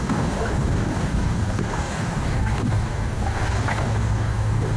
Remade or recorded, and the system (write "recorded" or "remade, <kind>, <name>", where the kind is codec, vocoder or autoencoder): remade, codec, DAC